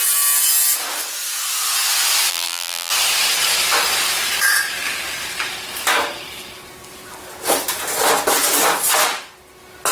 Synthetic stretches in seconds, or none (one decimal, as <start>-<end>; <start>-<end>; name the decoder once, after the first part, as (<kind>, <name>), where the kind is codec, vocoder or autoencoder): 2.3-2.9 (vocoder, BigVGAN v2)